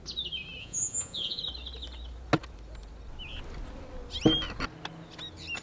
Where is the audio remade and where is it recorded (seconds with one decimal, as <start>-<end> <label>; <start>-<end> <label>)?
0.0-0.6 recorded; 0.6-1.4 remade; 1.4-5.6 recorded